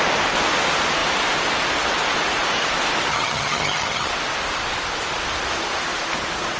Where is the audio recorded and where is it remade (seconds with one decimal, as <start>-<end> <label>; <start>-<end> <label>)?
0.0-3.1 recorded; 3.1-4.1 remade; 4.1-6.6 recorded